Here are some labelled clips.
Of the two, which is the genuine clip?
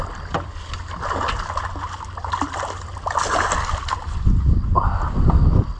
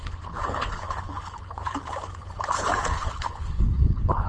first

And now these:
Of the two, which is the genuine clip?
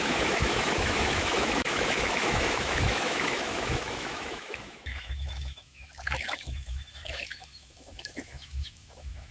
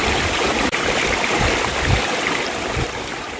second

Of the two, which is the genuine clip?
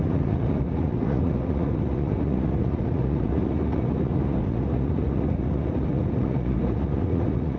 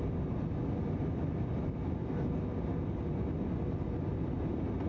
second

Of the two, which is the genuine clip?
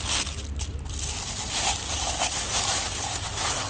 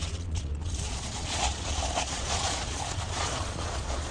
first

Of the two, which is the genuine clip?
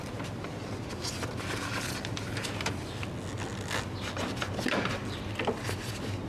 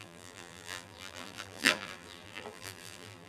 first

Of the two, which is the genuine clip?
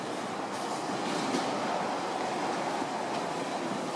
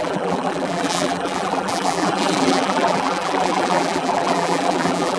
first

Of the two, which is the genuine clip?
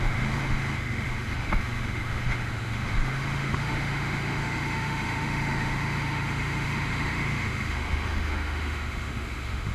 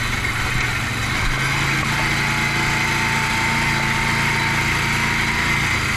second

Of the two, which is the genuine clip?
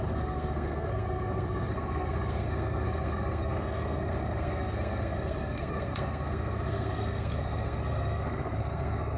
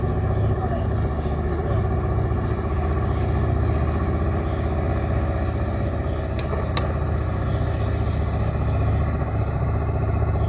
second